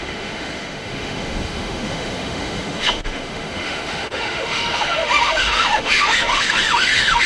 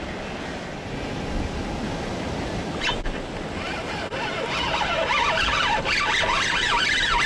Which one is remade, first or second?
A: first